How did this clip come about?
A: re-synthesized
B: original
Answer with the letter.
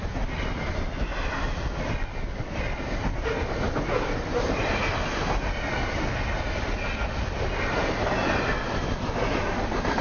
B